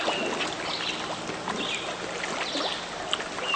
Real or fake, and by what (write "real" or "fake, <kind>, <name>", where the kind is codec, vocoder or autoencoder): real